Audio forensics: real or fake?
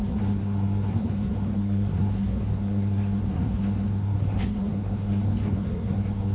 fake